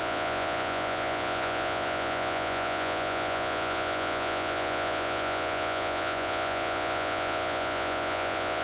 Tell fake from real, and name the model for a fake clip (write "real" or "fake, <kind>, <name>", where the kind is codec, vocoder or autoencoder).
fake, vocoder, Vocos